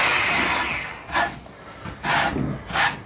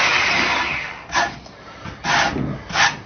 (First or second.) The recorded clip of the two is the first